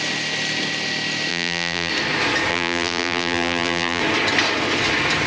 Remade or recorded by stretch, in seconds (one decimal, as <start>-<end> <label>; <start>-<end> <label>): 0.0-1.3 recorded; 1.3-1.9 remade; 1.9-2.5 recorded; 2.5-4.0 remade; 4.0-5.3 recorded